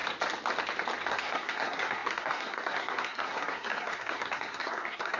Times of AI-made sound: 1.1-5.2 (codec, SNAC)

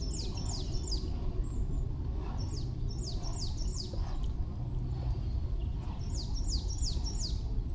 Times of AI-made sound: 3.7-4.2 (vocoder, Vocos)

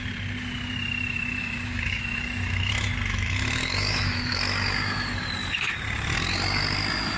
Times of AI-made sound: 1.3-2.7 (autoencoder, DAC-VAE); 3.1-4.4

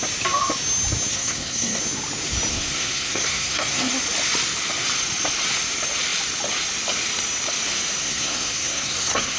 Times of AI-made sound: 1.1-1.8 (codec, SNAC); 2.5-3.9; 8.0-9.4

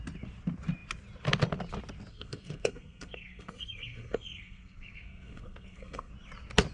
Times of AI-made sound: 2.1-6.1 (codec, SNAC)

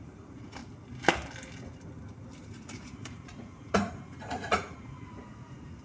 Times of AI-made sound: 0.0-0.6 (vocoder, Vocos); 2.4-5.8

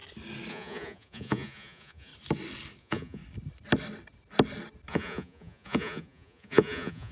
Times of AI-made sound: 0.5-2.1 (vocoder, Vocos); 2.8-3.2; 4.9-7.1

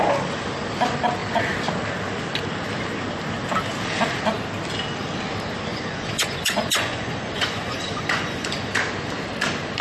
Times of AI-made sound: 5.7-8.7 (vocoder, Vocos)